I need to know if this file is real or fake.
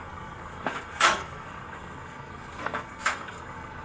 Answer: fake